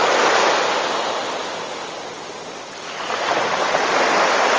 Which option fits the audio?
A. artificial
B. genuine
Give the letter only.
B